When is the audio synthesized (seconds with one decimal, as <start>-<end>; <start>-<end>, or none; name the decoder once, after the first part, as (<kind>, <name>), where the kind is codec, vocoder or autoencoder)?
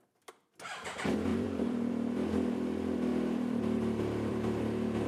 1.3-1.9 (vocoder, BigVGAN v2); 3.1-4.6